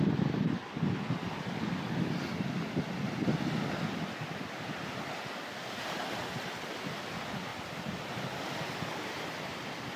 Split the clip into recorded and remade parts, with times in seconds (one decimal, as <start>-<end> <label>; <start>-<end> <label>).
0.0-7.5 recorded; 7.5-9.1 remade; 9.1-10.0 recorded